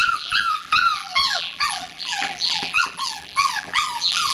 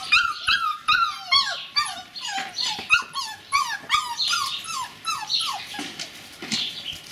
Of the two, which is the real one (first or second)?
second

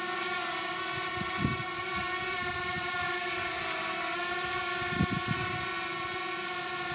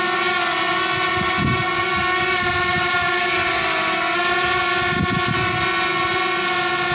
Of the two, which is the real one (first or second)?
second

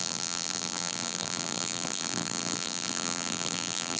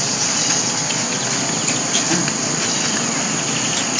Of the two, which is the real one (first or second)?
second